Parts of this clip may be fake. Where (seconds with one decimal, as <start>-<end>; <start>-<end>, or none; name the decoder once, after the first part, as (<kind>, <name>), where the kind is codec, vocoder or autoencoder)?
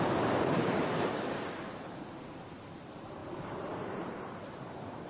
0.0-0.8 (vocoder, BigVGAN v2); 1.6-3.2; 4.5-5.1